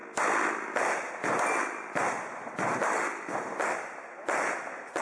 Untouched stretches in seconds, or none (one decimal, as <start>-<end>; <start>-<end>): 0.0-5.0